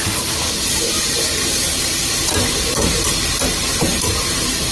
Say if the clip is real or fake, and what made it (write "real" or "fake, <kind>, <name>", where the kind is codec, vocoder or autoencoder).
fake, vocoder, BigVGAN v2